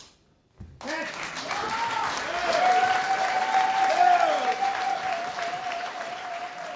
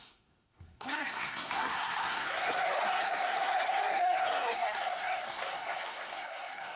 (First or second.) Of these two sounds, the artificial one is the second